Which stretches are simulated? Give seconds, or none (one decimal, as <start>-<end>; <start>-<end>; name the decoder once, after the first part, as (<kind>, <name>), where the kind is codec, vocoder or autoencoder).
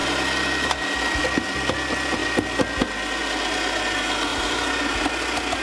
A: 4.3-4.9 (vocoder, BigVGAN v2)